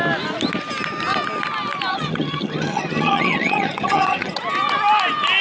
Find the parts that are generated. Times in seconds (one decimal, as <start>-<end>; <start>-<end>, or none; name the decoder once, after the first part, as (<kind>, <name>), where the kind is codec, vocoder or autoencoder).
1.9-4.4 (vocoder, HiFi-GAN)